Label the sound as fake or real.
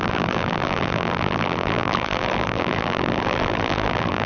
fake